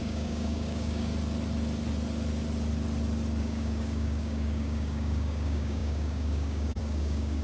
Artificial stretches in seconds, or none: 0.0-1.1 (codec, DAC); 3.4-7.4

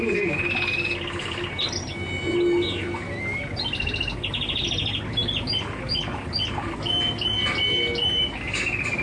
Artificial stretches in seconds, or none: none

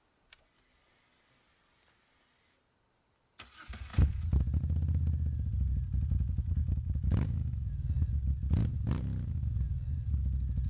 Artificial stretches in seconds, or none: 6.6-7.7 (autoencoder, DAC-VAE)

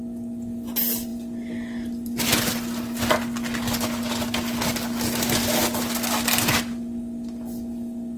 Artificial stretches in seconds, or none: none